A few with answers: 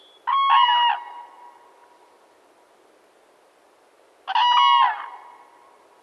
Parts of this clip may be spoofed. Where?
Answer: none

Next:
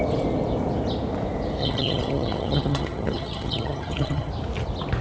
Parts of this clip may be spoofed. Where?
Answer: 1.6-4.3 (vocoder, HiFi-GAN)